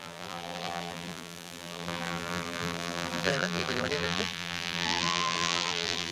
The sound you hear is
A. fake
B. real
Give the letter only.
A